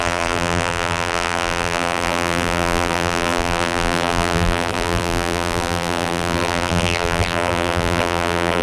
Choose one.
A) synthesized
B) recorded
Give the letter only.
A